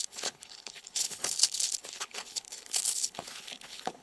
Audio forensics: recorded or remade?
remade